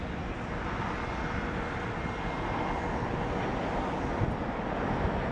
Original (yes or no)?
yes